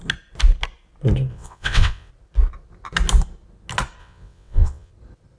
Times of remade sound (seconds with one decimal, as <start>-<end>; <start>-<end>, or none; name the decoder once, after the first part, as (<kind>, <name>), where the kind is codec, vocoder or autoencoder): 1.3-2.1 (vocoder, WaveNeXt); 4.0-4.9